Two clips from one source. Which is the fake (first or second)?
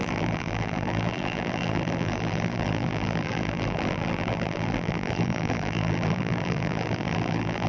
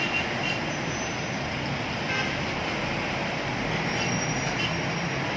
first